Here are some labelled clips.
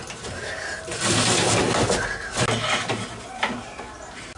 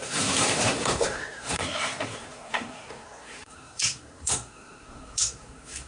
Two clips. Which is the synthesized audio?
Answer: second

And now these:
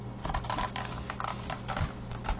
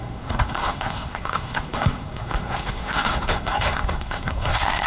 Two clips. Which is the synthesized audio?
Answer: second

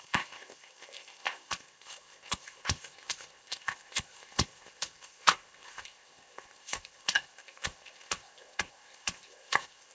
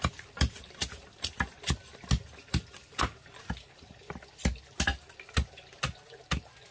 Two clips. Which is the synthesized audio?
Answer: first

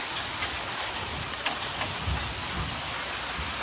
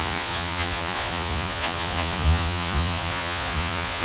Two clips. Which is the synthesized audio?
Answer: second